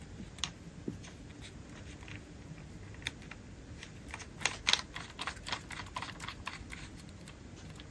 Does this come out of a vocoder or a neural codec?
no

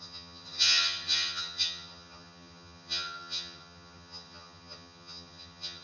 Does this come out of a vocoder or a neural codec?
yes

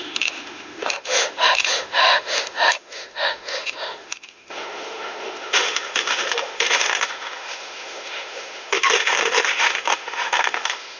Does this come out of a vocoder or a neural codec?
yes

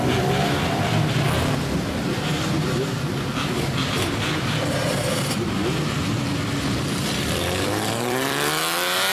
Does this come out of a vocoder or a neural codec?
yes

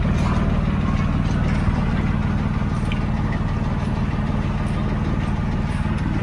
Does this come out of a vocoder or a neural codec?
no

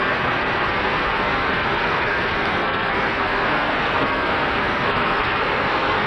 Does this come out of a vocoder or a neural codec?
yes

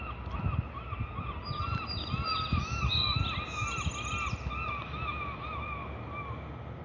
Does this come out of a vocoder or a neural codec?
no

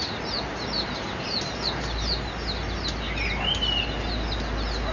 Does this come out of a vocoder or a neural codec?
no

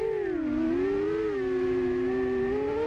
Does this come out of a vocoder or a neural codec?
no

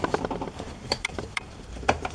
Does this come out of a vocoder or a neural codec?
yes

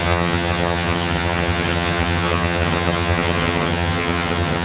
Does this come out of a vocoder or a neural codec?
yes